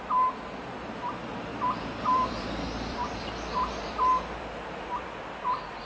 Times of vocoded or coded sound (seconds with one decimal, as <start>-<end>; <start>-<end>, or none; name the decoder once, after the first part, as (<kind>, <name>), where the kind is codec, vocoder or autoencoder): 1.5-5.0 (vocoder, BigVGAN v2)

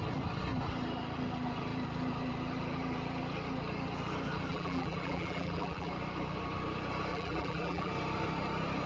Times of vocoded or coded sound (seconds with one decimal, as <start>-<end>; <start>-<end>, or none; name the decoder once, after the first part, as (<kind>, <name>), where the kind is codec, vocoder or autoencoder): 4.5-5.9 (vocoder, BigVGAN v2); 7.1-7.9

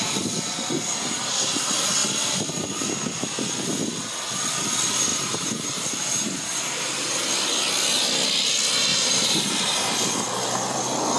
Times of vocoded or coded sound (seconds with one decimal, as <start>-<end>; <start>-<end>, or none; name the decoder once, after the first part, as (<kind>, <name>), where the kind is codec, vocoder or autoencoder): 5.1-7.2 (vocoder, BigVGAN v2); 8.9-9.5

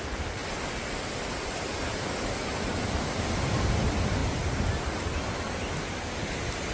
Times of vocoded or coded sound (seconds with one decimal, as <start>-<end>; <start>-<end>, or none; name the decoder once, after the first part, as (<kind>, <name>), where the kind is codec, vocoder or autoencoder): 0.4-2.0 (vocoder, BigVGAN v2); 2.5-3.6

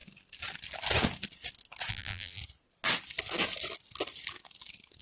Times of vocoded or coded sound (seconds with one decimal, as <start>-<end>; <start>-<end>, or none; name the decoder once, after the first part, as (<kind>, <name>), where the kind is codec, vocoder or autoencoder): 1.9-2.4 (vocoder, BigVGAN v2)

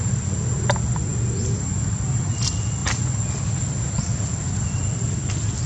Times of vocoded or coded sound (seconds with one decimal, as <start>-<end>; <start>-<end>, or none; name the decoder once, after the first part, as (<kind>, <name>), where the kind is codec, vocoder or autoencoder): none

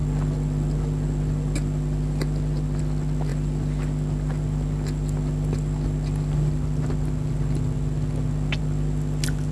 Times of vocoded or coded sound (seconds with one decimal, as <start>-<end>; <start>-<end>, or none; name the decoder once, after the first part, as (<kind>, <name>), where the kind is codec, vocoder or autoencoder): none

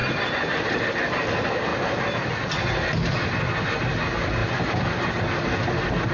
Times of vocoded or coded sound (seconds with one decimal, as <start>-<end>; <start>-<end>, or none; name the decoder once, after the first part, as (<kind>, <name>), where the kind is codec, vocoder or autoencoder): 0.0-0.8 (vocoder, BigVGAN v2); 1.7-2.3